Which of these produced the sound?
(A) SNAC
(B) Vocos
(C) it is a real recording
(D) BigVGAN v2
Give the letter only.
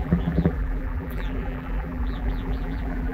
D